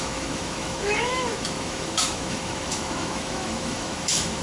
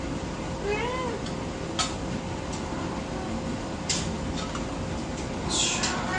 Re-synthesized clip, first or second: first